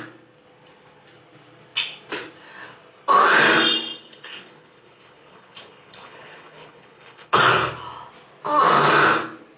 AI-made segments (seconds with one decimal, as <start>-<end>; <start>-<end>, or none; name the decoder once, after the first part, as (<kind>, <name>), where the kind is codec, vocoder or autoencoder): 4.0-7.4 (codec, HILCodec)